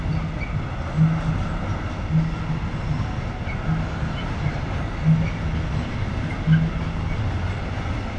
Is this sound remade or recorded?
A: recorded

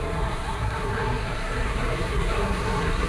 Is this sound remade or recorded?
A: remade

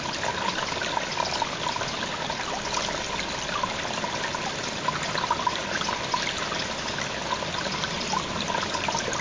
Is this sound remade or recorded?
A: recorded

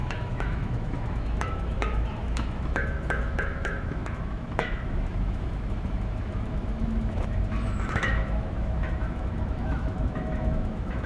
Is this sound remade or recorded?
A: remade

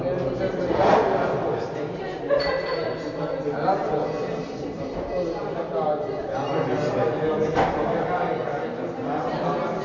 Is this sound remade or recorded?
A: recorded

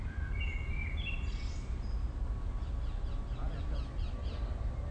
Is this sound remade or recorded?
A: recorded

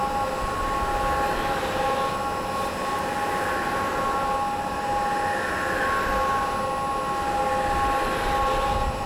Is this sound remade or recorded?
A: recorded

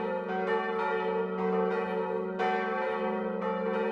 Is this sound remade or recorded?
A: recorded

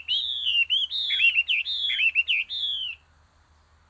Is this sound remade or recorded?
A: recorded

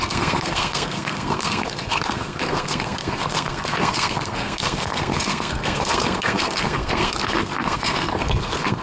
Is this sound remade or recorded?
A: remade